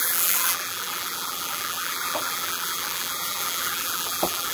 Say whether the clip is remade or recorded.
remade